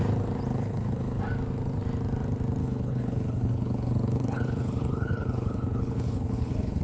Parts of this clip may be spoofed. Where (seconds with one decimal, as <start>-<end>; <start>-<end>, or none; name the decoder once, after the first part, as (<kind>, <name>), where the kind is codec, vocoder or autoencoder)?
0.5-1.2 (codec, HILCodec); 2.6-6.8